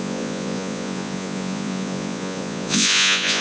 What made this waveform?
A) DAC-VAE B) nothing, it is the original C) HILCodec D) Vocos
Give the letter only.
D